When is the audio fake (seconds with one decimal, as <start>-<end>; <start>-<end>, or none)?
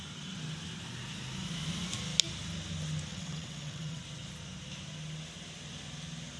3.1-4.0